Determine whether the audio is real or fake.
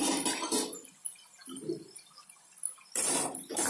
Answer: real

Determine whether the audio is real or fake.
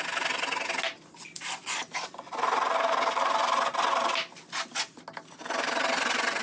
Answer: real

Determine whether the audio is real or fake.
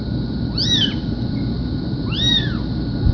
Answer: fake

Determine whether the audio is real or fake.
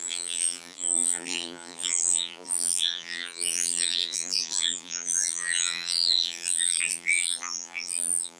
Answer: fake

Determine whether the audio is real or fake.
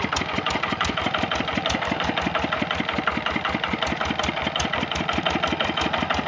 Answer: fake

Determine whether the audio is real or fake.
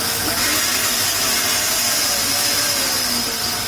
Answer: real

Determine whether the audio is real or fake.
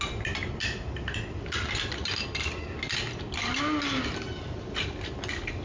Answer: real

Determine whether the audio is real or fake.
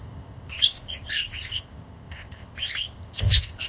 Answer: fake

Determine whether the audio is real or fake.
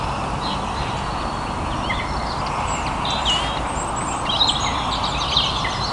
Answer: real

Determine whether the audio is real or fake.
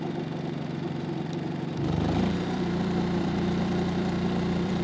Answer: fake